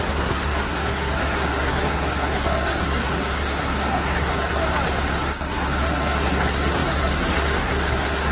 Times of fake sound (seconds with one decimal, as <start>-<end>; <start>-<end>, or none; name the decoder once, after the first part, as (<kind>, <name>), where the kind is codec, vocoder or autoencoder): 0.0-4.6 (codec, SNAC); 5.2-8.3